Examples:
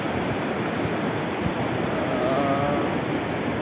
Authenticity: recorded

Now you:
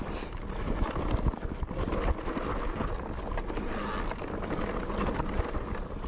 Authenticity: recorded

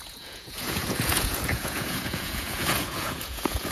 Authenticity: remade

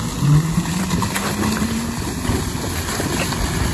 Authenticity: recorded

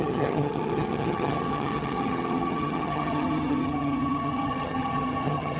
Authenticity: remade